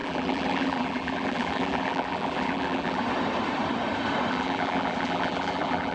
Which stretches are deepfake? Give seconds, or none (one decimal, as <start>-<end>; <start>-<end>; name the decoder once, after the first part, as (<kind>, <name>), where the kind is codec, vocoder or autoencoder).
0.0-3.0 (vocoder, BigVGAN v2); 4.3-5.9